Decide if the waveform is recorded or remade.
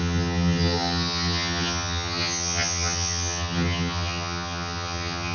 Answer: remade